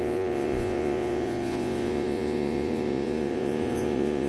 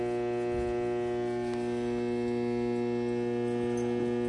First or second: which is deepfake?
first